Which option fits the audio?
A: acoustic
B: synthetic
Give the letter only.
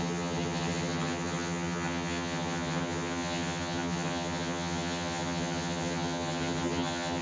B